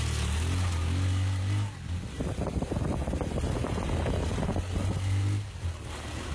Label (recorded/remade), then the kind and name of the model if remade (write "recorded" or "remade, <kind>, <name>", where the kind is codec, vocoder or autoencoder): recorded